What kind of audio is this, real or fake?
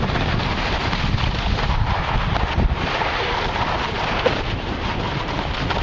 real